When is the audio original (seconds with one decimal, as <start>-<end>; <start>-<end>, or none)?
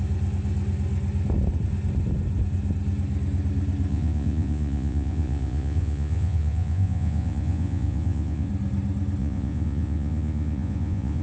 0.0-3.9; 8.5-9.2